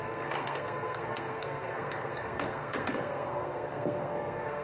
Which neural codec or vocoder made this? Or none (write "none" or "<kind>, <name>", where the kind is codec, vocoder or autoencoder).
codec, SNAC